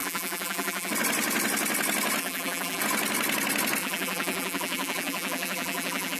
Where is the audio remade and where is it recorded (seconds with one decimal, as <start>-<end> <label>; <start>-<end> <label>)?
0.0-0.9 remade; 0.9-2.2 recorded; 2.2-2.8 remade; 2.8-3.8 recorded; 3.8-6.2 remade